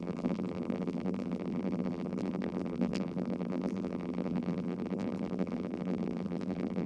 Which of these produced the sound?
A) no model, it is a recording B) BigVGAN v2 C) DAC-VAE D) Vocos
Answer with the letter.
B